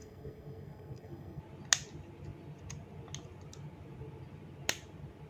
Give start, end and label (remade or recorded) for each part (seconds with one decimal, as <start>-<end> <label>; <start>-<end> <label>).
0.0-1.4 remade; 1.4-5.3 recorded